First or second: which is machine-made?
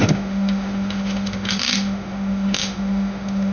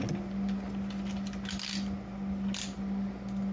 first